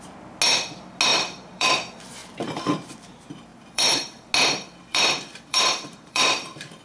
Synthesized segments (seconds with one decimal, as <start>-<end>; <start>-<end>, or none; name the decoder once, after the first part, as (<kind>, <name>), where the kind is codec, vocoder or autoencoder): 1.1-1.7 (vocoder, BigVGAN v2); 2.2-3.1; 3.5-4.3; 4.9-6.8